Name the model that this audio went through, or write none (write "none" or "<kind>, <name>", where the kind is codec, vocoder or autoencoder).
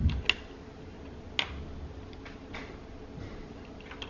none